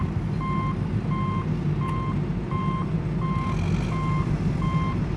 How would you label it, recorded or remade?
recorded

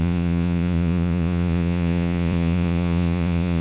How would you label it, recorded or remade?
remade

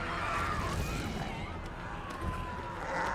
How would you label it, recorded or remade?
recorded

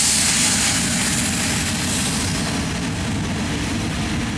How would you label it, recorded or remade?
recorded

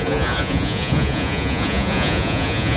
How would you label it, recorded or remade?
remade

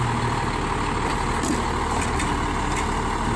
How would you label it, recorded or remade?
recorded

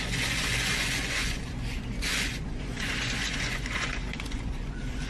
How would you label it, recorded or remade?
remade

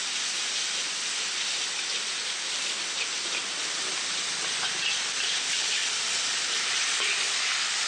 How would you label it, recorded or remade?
recorded